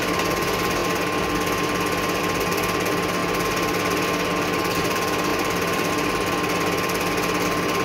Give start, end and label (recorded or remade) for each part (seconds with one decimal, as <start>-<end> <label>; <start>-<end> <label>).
0.0-5.3 recorded; 5.3-5.9 remade; 5.9-7.8 recorded